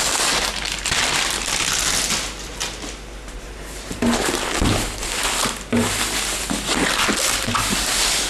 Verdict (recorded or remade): recorded